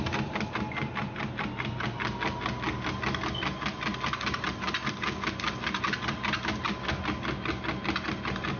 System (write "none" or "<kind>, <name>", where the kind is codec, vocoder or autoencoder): none